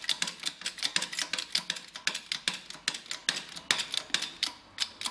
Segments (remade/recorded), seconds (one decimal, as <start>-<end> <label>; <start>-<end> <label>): 0.0-5.1 recorded